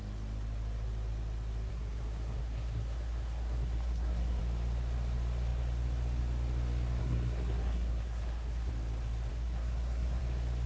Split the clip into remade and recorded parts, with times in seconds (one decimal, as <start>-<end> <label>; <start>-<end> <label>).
0.0-1.7 recorded; 1.7-4.4 remade; 4.4-7.0 recorded; 7.0-8.7 remade; 8.7-9.3 recorded; 9.3-10.2 remade; 10.2-10.7 recorded